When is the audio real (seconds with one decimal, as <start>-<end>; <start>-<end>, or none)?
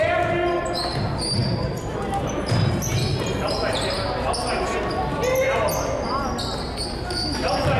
0.0-7.8